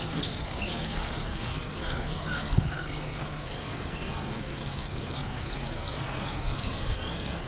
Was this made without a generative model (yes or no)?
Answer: no